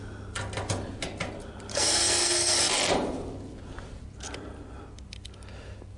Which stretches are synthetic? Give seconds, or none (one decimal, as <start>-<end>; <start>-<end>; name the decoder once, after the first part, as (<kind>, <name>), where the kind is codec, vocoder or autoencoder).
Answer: 1.7-2.7 (codec, SNAC)